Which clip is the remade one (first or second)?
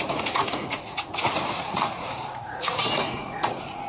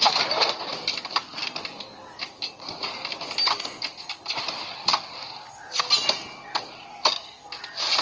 first